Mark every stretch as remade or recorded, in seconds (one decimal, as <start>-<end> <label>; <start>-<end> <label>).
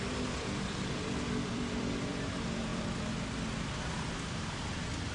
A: 0.0-2.7 remade; 2.7-4.1 recorded; 4.1-5.1 remade